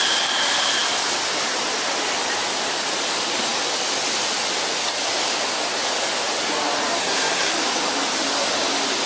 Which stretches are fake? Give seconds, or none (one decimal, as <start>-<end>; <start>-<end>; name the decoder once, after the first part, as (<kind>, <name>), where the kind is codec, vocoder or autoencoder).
7.0-7.5 (codec, SNAC)